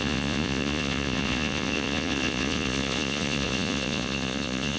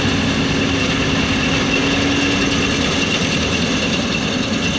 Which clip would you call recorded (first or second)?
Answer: second